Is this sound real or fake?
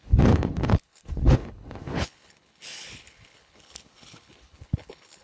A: fake